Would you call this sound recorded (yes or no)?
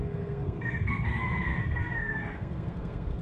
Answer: no